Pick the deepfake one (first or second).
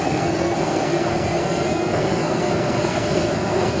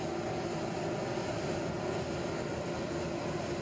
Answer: first